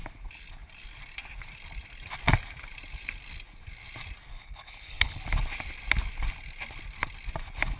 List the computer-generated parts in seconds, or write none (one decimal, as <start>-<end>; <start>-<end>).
4.3-5.2